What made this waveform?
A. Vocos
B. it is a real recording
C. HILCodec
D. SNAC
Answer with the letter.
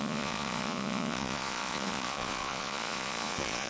A